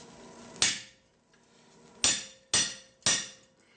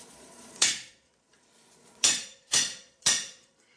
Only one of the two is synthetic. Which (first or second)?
second